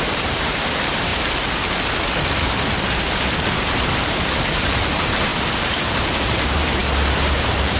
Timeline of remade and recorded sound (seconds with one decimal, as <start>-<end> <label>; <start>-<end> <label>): 0.0-1.1 remade; 1.1-4.4 recorded; 4.4-7.8 remade